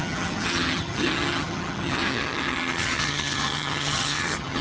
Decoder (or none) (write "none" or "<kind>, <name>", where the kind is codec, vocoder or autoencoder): vocoder, HiFi-GAN